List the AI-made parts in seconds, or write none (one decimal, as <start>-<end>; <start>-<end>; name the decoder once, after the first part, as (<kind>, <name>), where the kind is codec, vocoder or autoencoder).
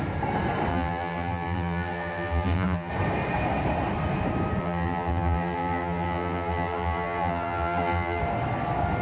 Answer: 0.7-2.9 (vocoder, BigVGAN v2); 4.6-8.2